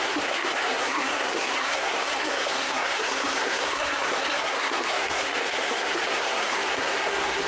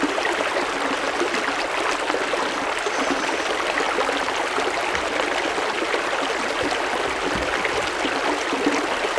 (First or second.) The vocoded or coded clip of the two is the first